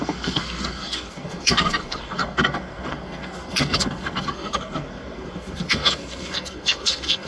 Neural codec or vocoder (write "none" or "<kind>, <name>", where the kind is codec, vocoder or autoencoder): codec, SNAC